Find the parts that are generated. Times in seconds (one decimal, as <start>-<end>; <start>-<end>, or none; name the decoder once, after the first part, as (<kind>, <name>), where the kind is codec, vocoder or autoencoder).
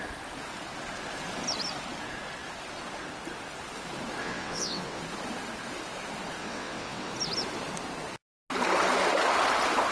4.2-5.0 (vocoder, WaveNeXt); 6.4-7.1